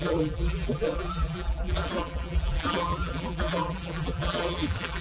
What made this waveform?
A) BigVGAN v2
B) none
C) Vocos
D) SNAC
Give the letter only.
A